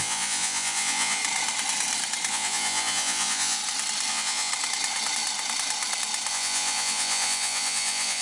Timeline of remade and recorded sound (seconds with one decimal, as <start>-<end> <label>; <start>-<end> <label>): 0.0-1.2 remade; 1.2-2.3 recorded; 2.3-3.6 remade; 3.6-4.1 recorded; 4.1-4.5 remade; 4.5-6.3 recorded; 6.3-8.2 remade